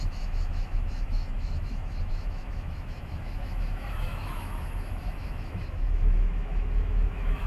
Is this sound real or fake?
fake